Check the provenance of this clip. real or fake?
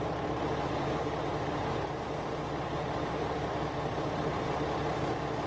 fake